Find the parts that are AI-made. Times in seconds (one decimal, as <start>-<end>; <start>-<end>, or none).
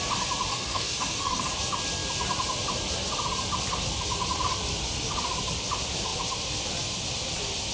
0.5-1.5